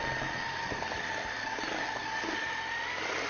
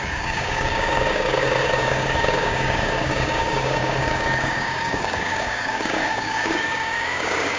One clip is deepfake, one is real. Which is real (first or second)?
first